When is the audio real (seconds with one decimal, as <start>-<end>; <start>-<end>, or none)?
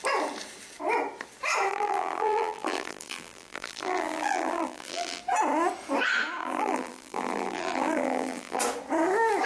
0.0-1.7; 5.2-6.4; 8.6-9.5